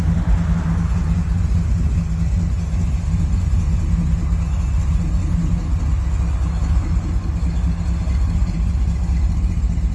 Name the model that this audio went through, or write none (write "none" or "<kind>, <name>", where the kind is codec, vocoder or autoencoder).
none